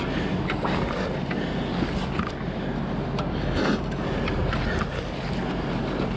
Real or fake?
real